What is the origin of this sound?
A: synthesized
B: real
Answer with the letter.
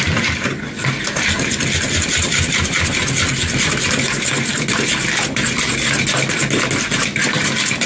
B